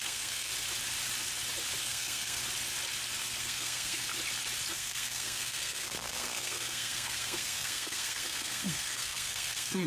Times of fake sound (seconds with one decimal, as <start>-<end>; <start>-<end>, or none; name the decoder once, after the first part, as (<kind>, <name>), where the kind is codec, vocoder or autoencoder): 0.0-0.5 (codec, SNAC); 1.8-2.4; 3.4-4.1; 4.7-9.9